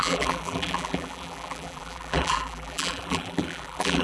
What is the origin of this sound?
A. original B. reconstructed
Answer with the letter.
B